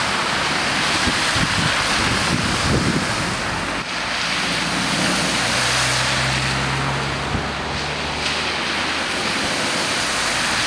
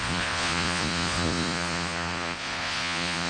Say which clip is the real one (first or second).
first